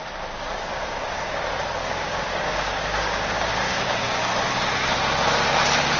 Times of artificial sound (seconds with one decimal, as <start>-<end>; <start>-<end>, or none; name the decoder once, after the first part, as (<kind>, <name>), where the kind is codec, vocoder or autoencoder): 0.7-1.4 (codec, DAC); 1.8-4.3